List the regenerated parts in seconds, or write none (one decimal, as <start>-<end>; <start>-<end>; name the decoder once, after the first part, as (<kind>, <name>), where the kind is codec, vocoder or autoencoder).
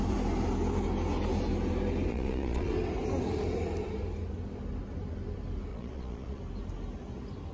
2.1-2.7 (vocoder, Vocos); 5.7-6.4